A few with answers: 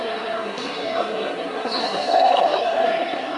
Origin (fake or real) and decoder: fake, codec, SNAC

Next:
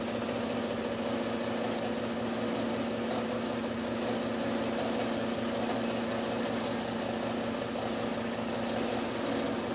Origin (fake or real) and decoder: real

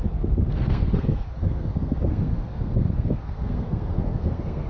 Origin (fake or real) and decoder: fake, codec, SNAC